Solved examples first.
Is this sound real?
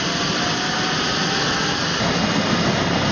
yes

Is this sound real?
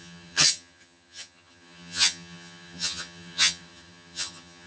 no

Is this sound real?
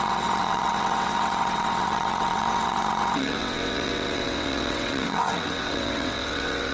no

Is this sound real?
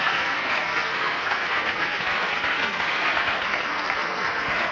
no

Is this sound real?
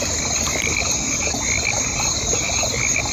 yes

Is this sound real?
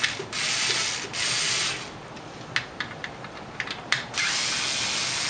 yes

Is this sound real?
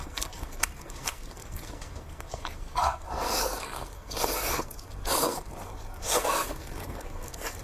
no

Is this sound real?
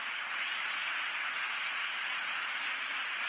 no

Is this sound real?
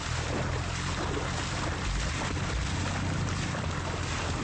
yes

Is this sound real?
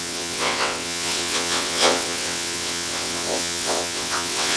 no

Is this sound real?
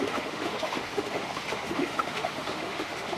no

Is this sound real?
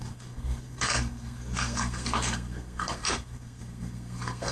no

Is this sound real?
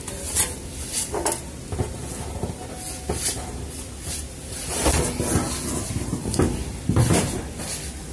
yes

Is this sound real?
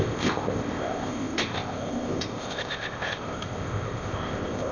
no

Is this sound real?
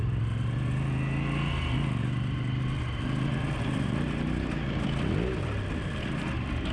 yes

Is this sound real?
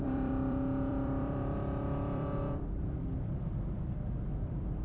no